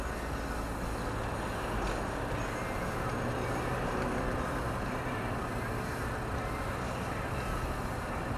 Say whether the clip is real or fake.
real